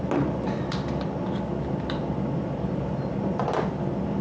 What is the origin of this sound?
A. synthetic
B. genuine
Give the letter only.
B